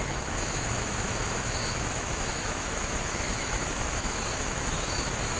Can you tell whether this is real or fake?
fake